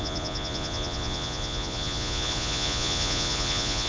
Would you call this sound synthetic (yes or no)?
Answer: yes